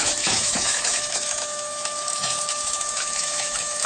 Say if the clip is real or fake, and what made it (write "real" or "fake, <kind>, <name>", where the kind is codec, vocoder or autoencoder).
fake, autoencoder, DAC-VAE